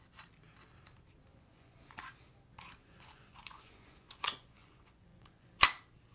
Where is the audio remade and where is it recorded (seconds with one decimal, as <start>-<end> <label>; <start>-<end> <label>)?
0.0-1.3 recorded; 1.3-2.1 remade; 2.1-2.8 recorded; 2.8-5.5 remade; 5.5-6.1 recorded